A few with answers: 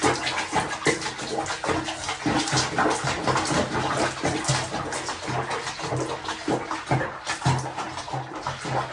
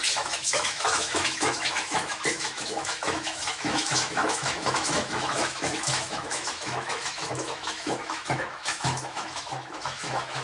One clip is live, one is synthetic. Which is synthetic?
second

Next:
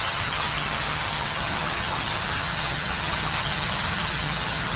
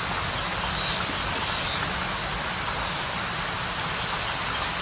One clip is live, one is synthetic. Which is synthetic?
first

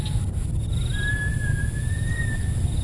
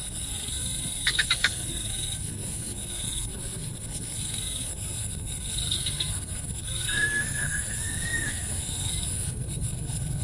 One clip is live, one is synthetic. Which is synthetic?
second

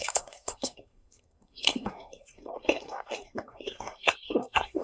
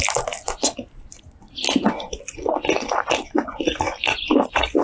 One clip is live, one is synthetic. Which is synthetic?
first